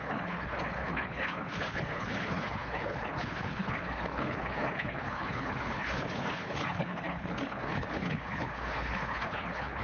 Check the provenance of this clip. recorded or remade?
remade